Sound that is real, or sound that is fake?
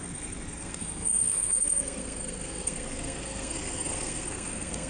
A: fake